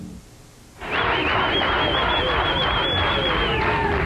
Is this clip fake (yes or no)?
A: no